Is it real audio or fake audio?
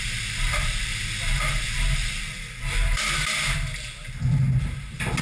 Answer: real